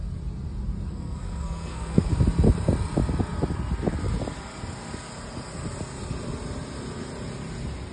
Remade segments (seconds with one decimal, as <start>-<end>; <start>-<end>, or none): 0.9-2.1